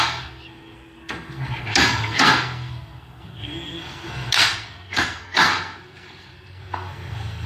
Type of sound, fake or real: fake